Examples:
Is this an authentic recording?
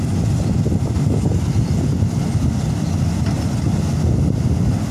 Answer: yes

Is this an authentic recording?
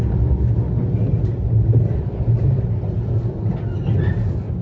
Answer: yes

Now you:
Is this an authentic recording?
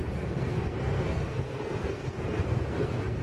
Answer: no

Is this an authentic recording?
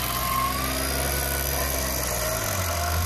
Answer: yes